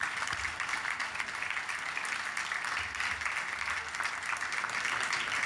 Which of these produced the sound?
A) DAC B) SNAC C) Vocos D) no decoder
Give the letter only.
D